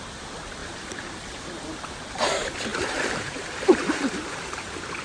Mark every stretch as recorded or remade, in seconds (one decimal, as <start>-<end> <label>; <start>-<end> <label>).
0.0-0.6 recorded; 0.6-2.3 remade; 2.3-2.7 recorded; 2.7-4.6 remade; 4.6-5.0 recorded